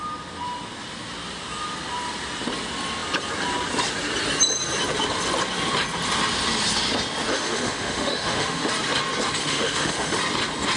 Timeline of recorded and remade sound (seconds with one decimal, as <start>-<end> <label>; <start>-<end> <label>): 0.0-7.3 recorded; 7.3-8.7 remade; 8.7-9.4 recorded; 9.4-10.2 remade; 10.2-10.8 recorded